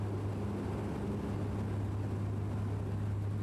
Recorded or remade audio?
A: recorded